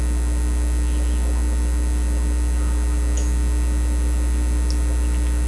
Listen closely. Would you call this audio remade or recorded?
recorded